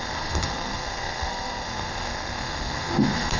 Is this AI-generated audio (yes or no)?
yes